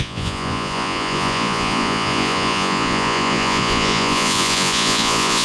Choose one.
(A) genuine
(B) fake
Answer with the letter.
B